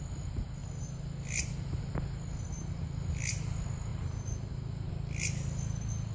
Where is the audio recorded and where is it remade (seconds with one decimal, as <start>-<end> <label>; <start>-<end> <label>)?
0.0-6.1 recorded